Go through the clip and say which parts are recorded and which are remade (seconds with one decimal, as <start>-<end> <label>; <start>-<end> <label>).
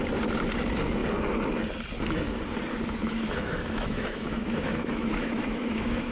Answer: 0.0-3.0 recorded; 3.0-6.1 remade